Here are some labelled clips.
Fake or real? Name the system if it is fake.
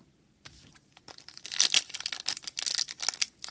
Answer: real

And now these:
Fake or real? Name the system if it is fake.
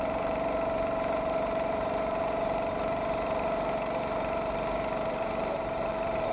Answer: fake, vocoder, BigVGAN v2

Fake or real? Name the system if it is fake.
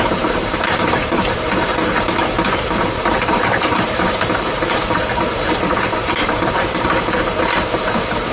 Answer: fake, vocoder, BigVGAN v2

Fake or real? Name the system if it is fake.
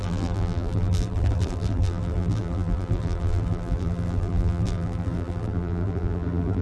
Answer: fake, vocoder, BigVGAN v2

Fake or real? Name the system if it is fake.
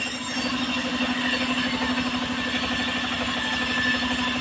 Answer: real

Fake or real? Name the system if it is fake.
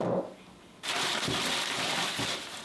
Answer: real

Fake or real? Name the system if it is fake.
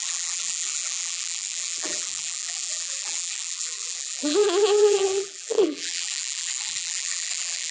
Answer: fake, vocoder, BigVGAN v2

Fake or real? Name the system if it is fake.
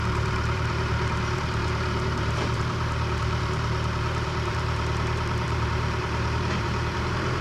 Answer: fake, vocoder, BigVGAN v2